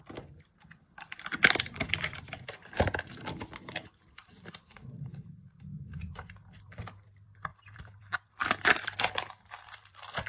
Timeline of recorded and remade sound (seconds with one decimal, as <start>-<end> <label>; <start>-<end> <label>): 0.0-10.3 remade